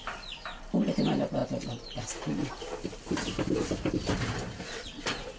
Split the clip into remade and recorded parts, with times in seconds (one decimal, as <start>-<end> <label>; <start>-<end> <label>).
0.0-1.4 remade; 1.4-4.6 recorded; 4.6-5.4 remade